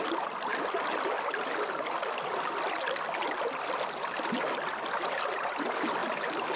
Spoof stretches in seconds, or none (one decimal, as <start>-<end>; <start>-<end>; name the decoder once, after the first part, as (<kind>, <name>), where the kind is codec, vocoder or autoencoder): none

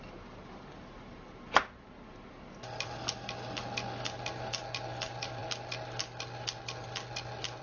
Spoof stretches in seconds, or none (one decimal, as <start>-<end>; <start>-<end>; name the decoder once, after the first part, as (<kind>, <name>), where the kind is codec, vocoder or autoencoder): none

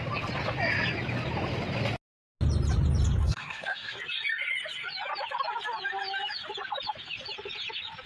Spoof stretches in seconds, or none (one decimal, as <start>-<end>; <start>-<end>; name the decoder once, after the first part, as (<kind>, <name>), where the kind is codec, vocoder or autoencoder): 3.2-4.0 (codec, SNAC)

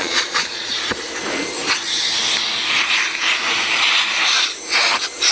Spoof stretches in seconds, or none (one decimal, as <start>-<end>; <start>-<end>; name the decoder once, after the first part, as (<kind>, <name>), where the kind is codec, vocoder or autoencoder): 0.0-0.7 (vocoder, Vocos)

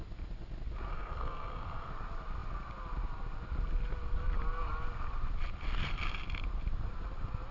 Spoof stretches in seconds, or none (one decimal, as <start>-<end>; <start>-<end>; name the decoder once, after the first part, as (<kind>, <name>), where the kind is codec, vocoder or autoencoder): 0.9-1.9 (codec, SNAC)

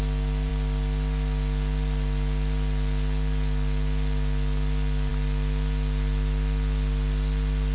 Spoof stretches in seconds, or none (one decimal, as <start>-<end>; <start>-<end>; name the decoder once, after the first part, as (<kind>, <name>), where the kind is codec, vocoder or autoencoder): none

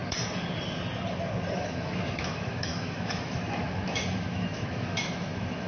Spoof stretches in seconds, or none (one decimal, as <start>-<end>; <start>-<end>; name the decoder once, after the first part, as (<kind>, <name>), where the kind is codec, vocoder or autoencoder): 1.5-5.7 (autoencoder, DAC-VAE)

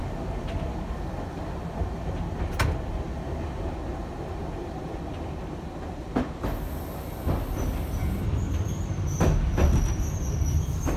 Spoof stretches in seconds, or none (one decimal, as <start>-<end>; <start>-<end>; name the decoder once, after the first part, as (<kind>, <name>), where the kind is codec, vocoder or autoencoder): 3.9-4.9 (vocoder, BigVGAN v2)